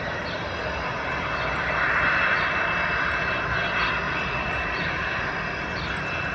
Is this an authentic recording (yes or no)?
yes